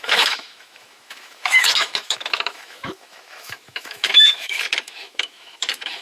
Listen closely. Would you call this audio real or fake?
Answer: fake